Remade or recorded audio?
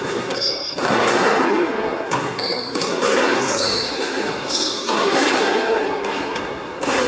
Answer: remade